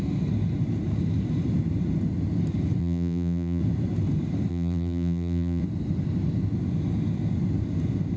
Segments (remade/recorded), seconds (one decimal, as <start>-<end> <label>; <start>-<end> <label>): 0.0-2.8 recorded; 2.8-3.6 remade; 3.6-4.5 recorded; 4.5-5.6 remade; 5.6-8.2 recorded

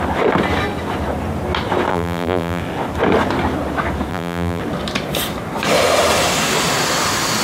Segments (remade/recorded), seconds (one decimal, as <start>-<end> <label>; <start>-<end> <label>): 0.0-1.9 recorded; 1.9-2.6 remade; 2.6-4.1 recorded; 4.1-4.6 remade; 4.6-7.4 recorded

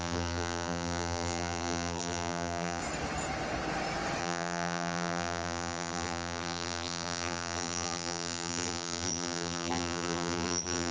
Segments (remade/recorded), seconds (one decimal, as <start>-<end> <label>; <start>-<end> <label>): 0.0-2.8 remade; 2.8-4.2 recorded; 4.2-10.9 remade

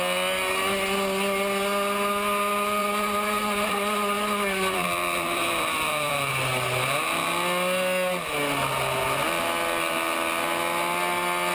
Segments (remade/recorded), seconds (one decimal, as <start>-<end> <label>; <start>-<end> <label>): 0.0-2.8 recorded; 2.8-6.3 remade; 6.3-11.5 recorded